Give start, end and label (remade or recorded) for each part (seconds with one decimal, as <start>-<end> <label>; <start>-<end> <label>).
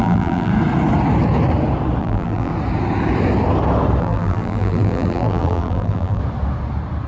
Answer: 0.0-0.5 remade; 0.5-2.0 recorded; 2.0-2.5 remade; 2.5-4.0 recorded; 4.0-6.2 remade; 6.2-7.1 recorded